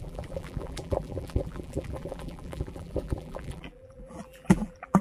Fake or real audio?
fake